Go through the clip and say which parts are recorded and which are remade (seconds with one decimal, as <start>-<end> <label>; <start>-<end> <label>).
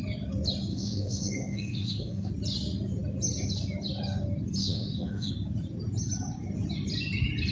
0.0-0.7 recorded; 0.7-2.3 remade; 2.3-4.6 recorded; 4.6-5.3 remade; 5.3-7.5 recorded